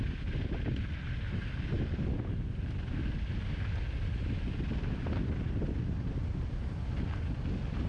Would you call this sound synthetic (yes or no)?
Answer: no